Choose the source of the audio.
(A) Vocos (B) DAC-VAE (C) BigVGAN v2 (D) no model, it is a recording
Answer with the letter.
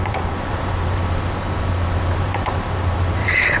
C